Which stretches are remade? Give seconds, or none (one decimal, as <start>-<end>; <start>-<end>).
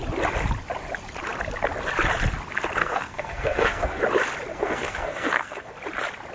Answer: 2.8-4.0; 4.5-5.7